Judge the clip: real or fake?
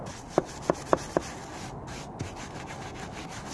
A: real